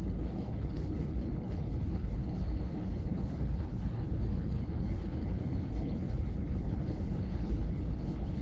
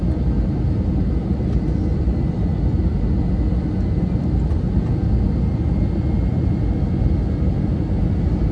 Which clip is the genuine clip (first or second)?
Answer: second